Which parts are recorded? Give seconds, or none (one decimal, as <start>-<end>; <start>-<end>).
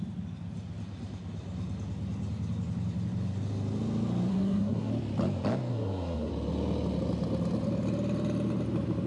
0.0-4.3; 4.9-5.7; 6.3-9.1